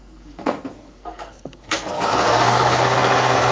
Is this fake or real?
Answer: fake